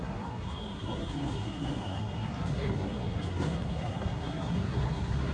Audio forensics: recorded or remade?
remade